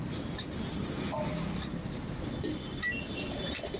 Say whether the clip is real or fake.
real